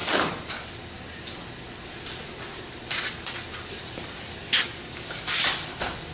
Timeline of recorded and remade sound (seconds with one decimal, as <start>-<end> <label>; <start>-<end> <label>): 0.0-3.7 recorded; 3.7-6.1 remade